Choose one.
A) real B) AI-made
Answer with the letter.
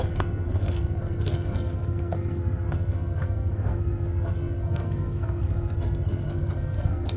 B